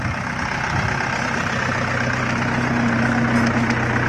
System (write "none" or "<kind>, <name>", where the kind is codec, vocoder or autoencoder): none